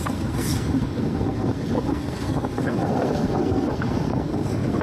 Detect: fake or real fake